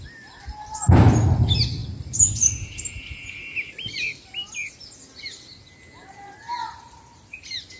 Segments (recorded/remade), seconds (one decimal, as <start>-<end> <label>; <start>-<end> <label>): 0.0-7.8 recorded

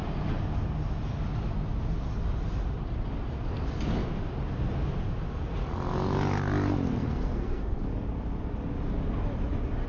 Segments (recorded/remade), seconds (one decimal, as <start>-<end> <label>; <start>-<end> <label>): 0.0-6.9 recorded; 6.9-7.8 remade; 7.8-9.9 recorded

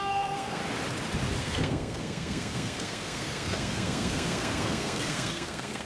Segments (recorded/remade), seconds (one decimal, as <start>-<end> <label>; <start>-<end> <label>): 0.0-0.6 remade; 0.6-1.4 recorded; 1.4-5.9 remade

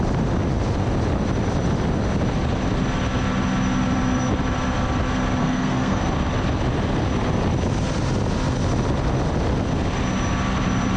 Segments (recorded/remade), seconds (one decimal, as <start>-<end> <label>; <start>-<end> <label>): 0.0-5.4 recorded; 5.4-6.0 remade; 6.0-11.0 recorded

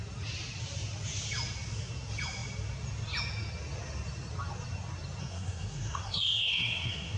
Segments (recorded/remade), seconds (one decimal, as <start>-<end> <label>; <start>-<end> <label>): 0.0-5.2 recorded; 5.2-7.2 remade